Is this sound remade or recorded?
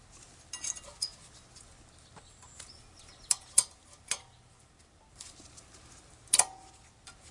recorded